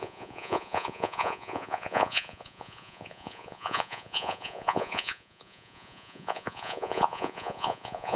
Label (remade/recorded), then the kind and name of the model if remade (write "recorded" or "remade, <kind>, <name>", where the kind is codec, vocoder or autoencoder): remade, vocoder, Vocos